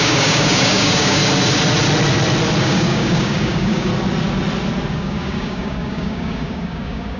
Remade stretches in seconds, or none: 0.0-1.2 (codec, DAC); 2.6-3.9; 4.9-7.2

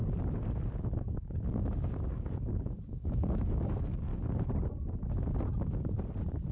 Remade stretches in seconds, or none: 1.0-4.1 (codec, DAC)

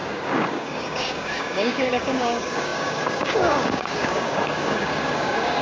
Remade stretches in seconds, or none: 0.0-5.6 (codec, DAC)

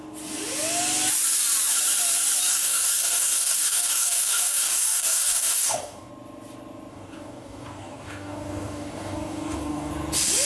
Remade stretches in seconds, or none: 2.5-6.1 (codec, DAC); 6.9-9.9

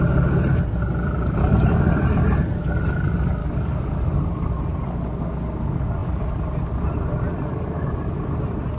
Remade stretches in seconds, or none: 3.4-4.2 (codec, DAC)